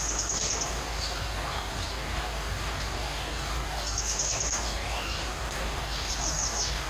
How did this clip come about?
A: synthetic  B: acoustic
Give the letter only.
A